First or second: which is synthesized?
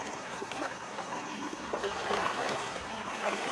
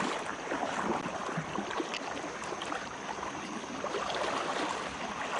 first